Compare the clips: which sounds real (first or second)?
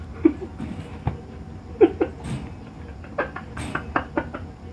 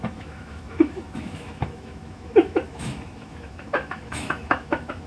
first